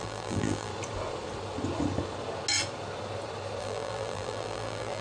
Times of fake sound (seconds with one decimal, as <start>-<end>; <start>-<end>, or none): 0.0-0.7; 3.6-5.0